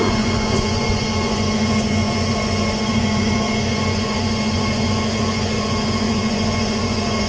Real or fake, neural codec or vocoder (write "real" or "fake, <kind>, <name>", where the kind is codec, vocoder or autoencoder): fake, vocoder, Vocos